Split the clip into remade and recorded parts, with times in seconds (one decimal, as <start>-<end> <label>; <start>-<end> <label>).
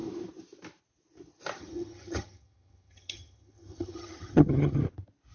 0.0-1.6 recorded; 1.6-4.8 remade; 4.8-5.3 recorded